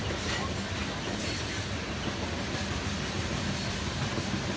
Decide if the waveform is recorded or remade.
recorded